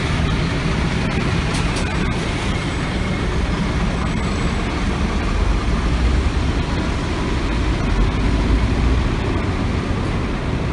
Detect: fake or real real